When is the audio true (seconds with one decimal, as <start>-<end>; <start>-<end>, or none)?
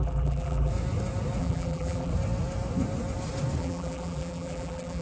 0.7-1.4; 2.1-3.6